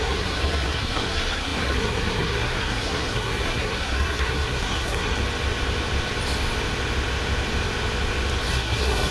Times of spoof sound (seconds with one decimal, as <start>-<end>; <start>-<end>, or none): 0.0-5.2; 8.5-9.1